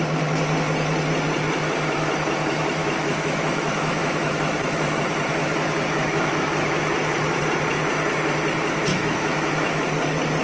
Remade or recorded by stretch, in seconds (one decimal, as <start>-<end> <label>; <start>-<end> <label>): 0.0-2.8 recorded; 2.8-5.0 remade; 5.0-5.4 recorded; 5.4-7.4 remade; 7.4-8.9 recorded; 8.9-9.8 remade; 9.8-10.4 recorded